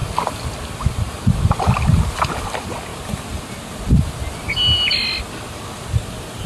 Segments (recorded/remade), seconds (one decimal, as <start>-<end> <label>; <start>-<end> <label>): 0.0-1.7 remade; 1.7-6.5 recorded